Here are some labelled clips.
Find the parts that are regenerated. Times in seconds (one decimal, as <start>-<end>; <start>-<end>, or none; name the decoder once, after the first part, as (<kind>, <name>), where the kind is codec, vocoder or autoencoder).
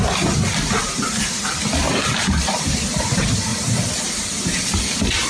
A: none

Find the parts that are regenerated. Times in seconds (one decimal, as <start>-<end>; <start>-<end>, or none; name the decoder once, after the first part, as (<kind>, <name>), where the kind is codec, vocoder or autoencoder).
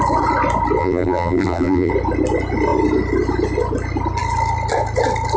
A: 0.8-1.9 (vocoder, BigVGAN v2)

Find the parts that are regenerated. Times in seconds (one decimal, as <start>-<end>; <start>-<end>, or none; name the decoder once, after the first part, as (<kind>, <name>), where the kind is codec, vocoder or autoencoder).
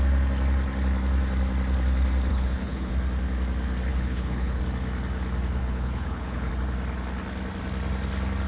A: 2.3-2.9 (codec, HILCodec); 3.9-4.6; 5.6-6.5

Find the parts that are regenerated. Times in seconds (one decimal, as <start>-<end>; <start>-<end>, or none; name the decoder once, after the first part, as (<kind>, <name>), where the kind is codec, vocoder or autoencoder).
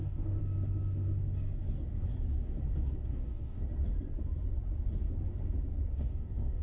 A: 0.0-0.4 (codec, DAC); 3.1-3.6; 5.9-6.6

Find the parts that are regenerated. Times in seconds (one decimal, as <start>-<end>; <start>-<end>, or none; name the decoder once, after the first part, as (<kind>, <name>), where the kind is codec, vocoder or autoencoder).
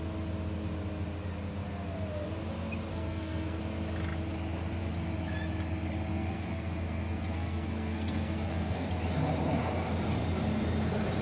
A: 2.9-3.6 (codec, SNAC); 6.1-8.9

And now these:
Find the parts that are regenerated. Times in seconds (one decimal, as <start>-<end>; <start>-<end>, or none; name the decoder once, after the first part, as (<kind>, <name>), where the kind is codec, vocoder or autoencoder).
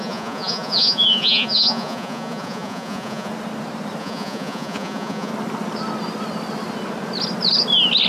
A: 0.0-3.3 (vocoder, Vocos); 4.0-5.3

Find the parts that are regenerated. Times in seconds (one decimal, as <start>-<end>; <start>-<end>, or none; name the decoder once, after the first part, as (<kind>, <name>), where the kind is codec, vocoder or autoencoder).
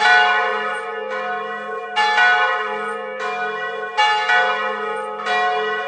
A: none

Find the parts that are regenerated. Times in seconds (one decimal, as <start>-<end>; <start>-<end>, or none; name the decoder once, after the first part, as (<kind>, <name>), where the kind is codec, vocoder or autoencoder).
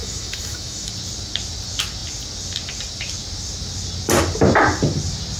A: 0.0-0.9 (autoencoder, DAC-VAE)